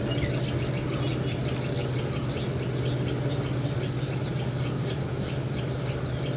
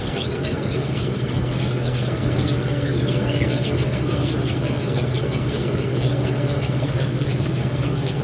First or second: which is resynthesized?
second